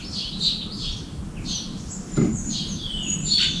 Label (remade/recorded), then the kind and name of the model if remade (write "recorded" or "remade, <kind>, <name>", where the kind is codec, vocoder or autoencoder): recorded